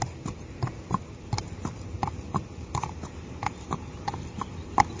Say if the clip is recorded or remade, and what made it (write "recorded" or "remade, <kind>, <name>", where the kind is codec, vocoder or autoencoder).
recorded